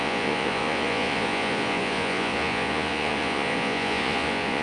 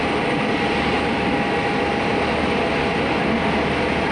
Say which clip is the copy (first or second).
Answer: first